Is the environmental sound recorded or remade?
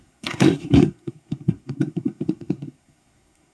remade